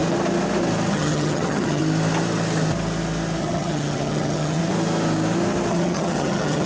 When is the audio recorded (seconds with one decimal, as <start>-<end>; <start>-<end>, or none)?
0.0-0.9; 1.8-3.4; 4.6-5.7